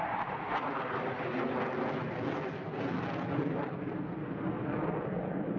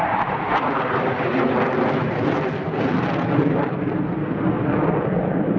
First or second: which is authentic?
first